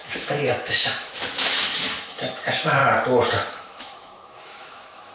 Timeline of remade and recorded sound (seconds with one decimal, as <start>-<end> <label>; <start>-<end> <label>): 0.0-2.8 remade; 2.8-3.3 recorded; 3.3-5.1 remade